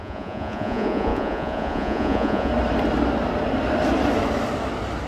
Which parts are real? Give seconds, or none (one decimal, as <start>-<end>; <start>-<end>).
2.5-5.1